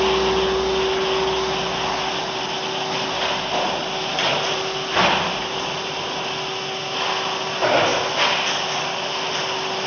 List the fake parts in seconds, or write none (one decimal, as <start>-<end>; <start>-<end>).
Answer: none